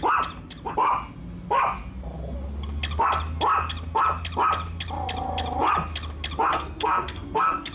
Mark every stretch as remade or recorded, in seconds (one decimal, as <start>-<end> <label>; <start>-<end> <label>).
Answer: 0.0-6.5 recorded; 6.5-7.7 remade